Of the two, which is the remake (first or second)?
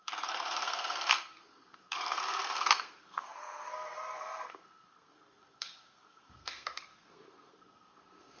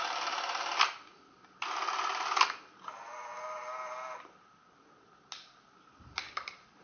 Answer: first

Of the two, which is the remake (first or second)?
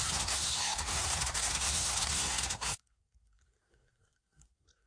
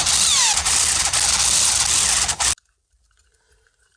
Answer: first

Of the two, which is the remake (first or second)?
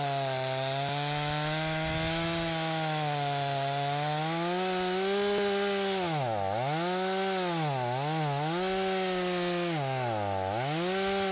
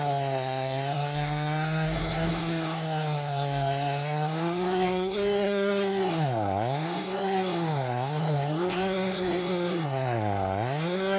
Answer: second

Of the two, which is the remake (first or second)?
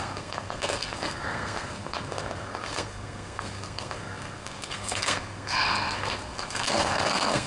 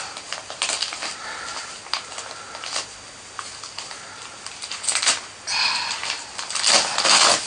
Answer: first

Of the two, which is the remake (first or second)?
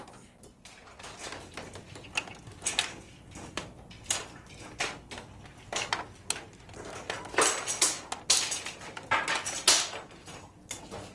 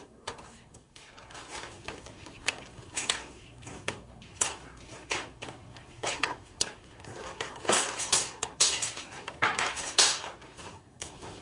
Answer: second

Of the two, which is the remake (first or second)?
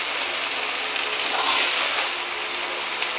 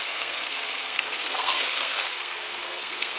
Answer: second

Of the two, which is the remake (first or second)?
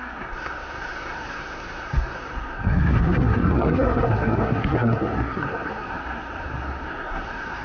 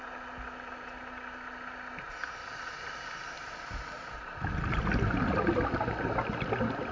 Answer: first